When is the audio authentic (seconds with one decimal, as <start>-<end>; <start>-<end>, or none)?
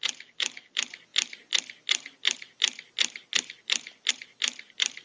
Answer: 0.0-5.0